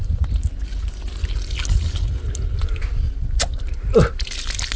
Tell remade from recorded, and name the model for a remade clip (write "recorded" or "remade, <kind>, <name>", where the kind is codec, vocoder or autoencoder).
recorded